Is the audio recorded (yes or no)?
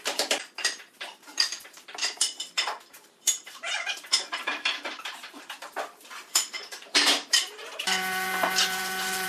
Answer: no